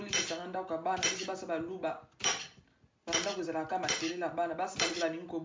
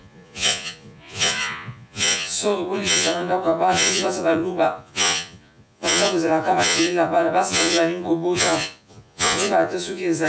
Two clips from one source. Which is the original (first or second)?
first